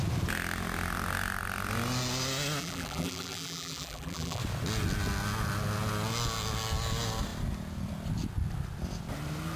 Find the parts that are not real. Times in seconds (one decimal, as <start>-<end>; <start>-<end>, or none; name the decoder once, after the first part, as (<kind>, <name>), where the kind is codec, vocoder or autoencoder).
2.6-4.4 (vocoder, BigVGAN v2)